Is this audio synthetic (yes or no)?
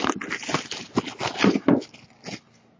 no